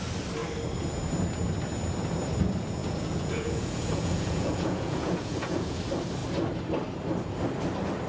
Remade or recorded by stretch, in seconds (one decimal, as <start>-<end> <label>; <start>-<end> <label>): 0.0-2.8 recorded; 2.8-5.8 remade; 5.8-8.1 recorded